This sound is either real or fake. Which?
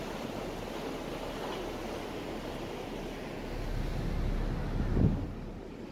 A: real